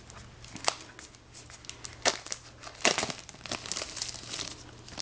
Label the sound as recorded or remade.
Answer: recorded